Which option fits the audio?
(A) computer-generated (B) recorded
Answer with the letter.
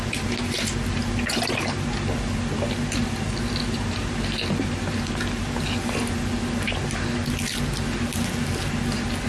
B